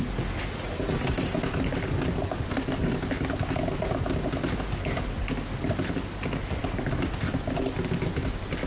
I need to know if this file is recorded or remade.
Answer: recorded